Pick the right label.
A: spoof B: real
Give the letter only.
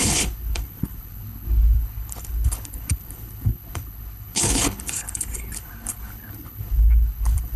A